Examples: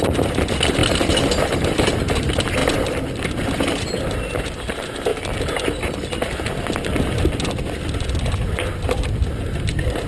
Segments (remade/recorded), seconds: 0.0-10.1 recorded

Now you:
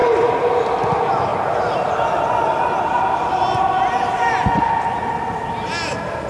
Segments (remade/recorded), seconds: 0.0-6.3 recorded

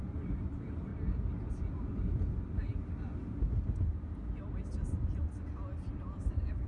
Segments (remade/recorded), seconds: 0.0-0.9 remade; 0.9-1.5 recorded; 1.5-2.7 remade; 2.7-5.9 recorded; 5.9-6.7 remade

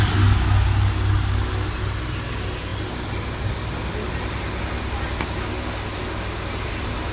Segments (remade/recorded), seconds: 0.0-7.1 recorded